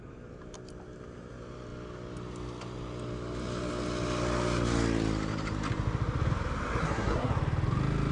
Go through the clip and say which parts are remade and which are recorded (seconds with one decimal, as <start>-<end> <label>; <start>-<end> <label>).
0.0-6.8 recorded; 6.8-7.3 remade; 7.3-8.1 recorded